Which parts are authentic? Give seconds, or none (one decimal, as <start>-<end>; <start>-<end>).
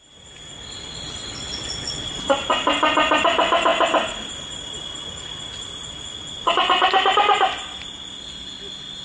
0.0-1.2; 2.1-9.0